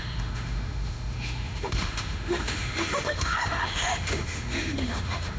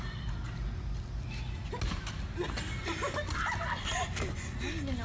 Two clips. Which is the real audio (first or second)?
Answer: second